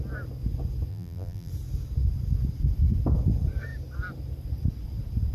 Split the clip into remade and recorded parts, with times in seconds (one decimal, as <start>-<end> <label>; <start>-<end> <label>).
0.0-0.9 recorded; 0.9-1.5 remade; 1.5-5.3 recorded